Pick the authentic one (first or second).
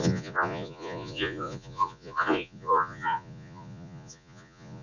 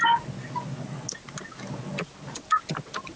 second